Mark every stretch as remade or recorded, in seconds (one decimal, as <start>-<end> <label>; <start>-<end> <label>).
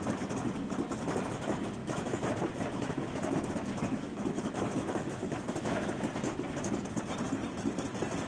0.0-1.8 recorded; 1.8-2.3 remade; 2.3-2.7 recorded; 2.7-6.0 remade; 6.0-8.3 recorded